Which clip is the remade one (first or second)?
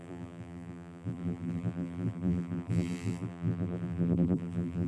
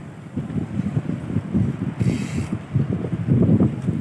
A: first